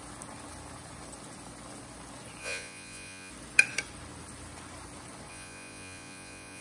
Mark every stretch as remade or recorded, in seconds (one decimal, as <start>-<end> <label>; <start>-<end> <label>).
0.0-2.4 recorded; 2.4-3.3 remade; 3.3-5.3 recorded; 5.3-6.6 remade